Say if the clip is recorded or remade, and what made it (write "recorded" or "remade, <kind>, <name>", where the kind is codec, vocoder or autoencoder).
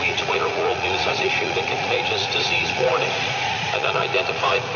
remade, vocoder, Vocos